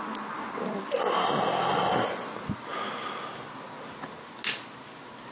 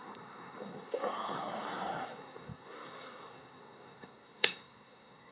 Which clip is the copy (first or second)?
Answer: second